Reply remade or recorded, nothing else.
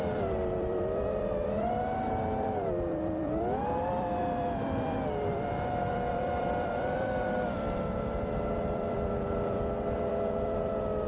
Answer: remade